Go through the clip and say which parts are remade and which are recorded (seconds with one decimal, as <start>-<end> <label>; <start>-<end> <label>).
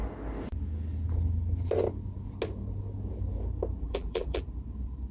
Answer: 0.0-3.8 recorded; 3.8-4.4 remade; 4.4-5.1 recorded